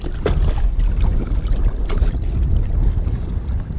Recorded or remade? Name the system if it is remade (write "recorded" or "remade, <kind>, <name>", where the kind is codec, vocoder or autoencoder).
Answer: recorded